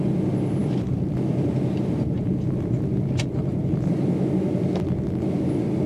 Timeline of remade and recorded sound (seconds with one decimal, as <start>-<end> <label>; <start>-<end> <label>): 0.0-0.6 recorded; 0.6-4.1 remade; 4.1-5.9 recorded